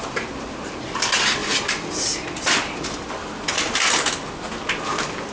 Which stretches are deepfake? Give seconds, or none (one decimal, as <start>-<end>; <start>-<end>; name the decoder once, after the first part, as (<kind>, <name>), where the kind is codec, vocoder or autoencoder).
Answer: none